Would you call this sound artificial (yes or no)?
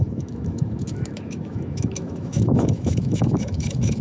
yes